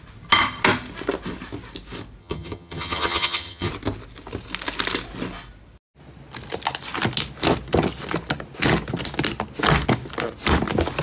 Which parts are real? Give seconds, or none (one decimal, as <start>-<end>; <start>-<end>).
0.0-2.2; 3.7-11.0